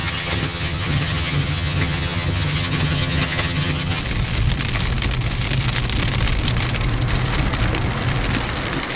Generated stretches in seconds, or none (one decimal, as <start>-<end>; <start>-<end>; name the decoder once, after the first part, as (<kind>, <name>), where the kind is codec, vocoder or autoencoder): 0.0-4.0 (vocoder, HiFi-GAN)

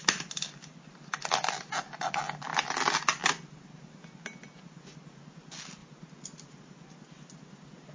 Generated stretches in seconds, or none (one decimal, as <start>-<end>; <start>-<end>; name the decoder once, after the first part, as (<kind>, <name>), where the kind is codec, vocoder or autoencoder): none